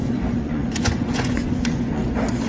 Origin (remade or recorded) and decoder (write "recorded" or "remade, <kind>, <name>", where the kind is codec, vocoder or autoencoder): remade, vocoder, Vocos